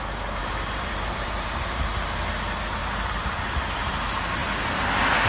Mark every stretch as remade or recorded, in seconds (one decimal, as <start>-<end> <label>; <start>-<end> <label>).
0.0-0.4 recorded; 0.4-1.8 remade; 1.8-2.8 recorded; 2.8-3.9 remade; 3.9-5.3 recorded